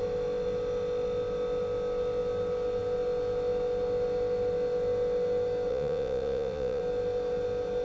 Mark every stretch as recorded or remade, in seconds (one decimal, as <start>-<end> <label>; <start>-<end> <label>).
0.0-5.7 recorded; 5.7-6.8 remade; 6.8-7.8 recorded